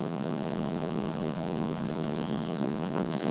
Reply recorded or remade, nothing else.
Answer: remade